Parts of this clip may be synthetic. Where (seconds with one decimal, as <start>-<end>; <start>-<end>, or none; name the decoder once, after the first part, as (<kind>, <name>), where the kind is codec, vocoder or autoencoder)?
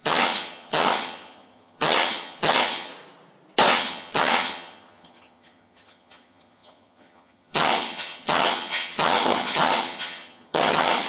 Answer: 0.0-2.9 (vocoder, HiFi-GAN); 3.7-11.1